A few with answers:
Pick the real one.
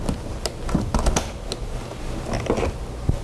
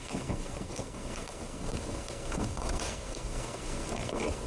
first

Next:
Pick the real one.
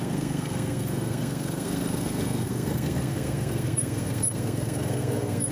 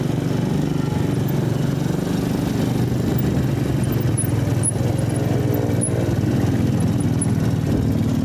second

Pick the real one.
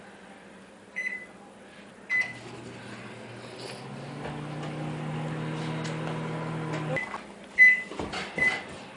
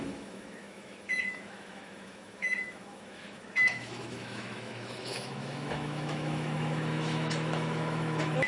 first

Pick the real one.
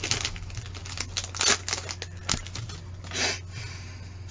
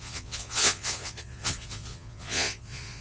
first